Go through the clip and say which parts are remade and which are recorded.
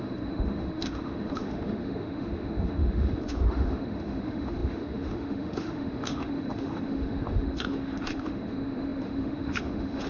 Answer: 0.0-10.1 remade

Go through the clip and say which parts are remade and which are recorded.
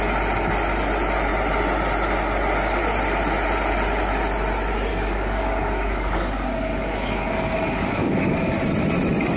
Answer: 0.0-4.9 recorded; 4.9-8.6 remade; 8.6-9.4 recorded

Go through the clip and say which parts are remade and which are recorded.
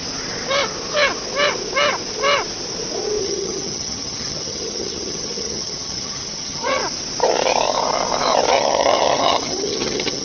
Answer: 0.0-3.2 recorded; 3.2-6.8 remade; 6.8-8.5 recorded; 8.5-10.2 remade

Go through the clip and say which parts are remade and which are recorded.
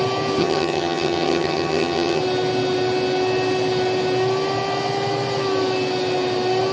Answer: 0.0-0.4 recorded; 0.4-2.2 remade; 2.2-6.7 recorded